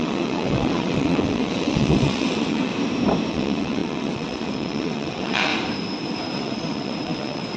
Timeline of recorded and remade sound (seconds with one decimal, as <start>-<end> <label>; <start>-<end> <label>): 0.0-2.7 remade; 2.7-3.3 recorded; 3.3-5.5 remade; 5.5-6.3 recorded; 6.3-7.6 remade